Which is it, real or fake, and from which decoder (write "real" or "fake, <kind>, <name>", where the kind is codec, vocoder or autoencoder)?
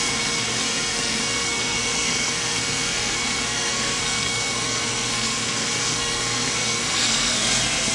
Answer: fake, codec, SNAC